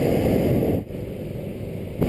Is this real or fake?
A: real